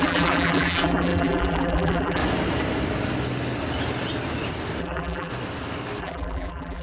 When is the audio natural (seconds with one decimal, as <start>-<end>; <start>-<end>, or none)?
2.2-4.8; 5.3-6.0